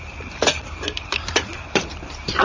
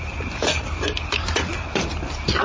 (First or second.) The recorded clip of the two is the second